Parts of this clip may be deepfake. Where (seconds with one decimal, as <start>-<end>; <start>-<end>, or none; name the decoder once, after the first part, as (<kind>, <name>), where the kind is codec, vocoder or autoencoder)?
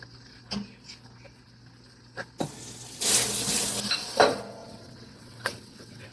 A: 4.6-6.1 (vocoder, WaveNeXt)